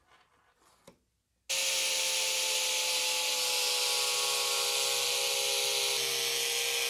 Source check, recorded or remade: recorded